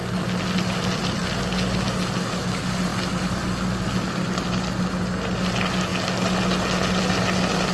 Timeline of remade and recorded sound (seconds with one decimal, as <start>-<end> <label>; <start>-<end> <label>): 0.0-7.7 recorded